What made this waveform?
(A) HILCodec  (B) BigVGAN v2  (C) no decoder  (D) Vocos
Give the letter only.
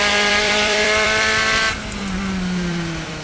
B